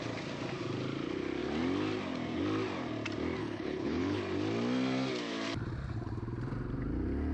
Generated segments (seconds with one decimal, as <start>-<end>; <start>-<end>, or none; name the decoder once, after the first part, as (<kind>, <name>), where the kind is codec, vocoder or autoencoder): 3.4-4.2 (codec, HILCodec)